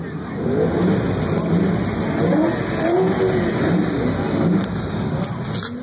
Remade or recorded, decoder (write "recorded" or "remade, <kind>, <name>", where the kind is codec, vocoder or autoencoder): recorded